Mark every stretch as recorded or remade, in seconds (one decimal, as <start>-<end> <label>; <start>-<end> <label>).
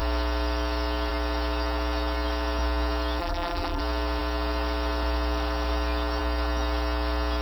0.0-3.2 recorded; 3.2-3.8 remade; 3.8-7.4 recorded